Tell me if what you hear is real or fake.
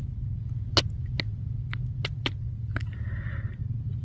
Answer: real